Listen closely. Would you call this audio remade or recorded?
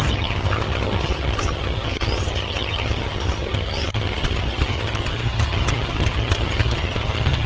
remade